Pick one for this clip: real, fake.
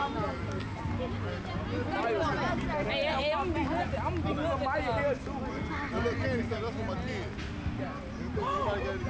real